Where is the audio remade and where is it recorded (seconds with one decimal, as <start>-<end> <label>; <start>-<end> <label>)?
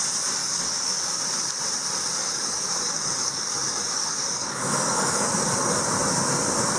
0.0-0.4 recorded; 0.4-1.2 remade; 1.2-2.2 recorded; 2.2-5.8 remade; 5.8-6.8 recorded